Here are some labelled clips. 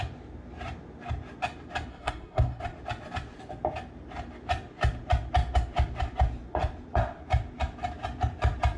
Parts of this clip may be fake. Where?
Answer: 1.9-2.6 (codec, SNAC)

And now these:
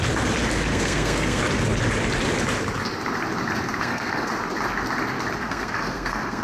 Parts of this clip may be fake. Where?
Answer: 0.7-1.4 (codec, SNAC); 3.8-4.3; 5.4-6.4

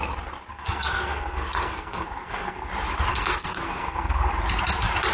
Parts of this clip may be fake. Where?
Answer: 0.5-2.7 (codec, SNAC); 3.1-4.3

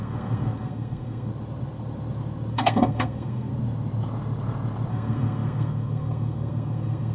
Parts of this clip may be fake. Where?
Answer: 0.0-1.3 (codec, SNAC); 2.5-3.5; 4.9-7.1